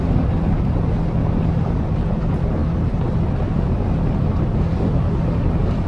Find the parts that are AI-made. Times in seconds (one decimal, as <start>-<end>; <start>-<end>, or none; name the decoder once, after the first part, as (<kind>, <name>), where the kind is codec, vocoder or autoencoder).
none